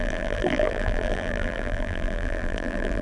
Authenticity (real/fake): fake